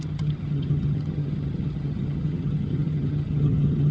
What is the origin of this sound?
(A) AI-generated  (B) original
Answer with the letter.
A